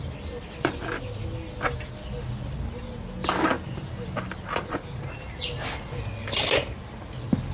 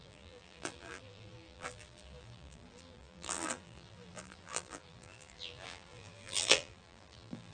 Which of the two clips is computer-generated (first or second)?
second